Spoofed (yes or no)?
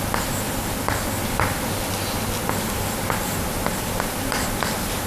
no